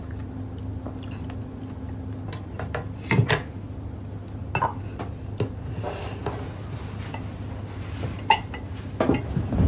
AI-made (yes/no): no